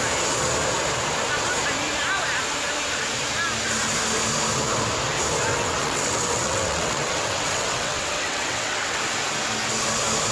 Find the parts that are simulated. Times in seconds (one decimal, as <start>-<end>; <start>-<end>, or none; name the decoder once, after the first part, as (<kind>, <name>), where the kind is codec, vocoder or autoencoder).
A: 5.5-9.0 (vocoder, WaveNeXt)